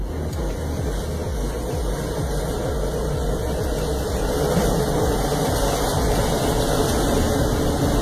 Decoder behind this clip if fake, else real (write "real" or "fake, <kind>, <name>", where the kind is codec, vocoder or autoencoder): real